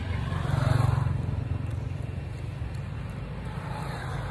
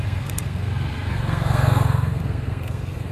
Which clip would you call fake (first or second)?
second